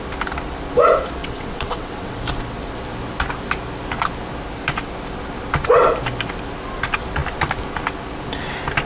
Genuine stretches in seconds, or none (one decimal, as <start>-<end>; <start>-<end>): 0.0-1.2; 2.2-8.9